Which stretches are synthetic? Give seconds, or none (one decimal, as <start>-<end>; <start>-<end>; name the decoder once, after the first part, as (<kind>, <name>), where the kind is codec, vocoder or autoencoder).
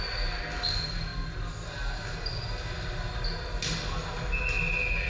none